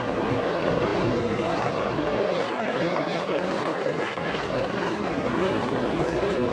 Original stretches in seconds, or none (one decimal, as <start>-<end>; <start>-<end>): none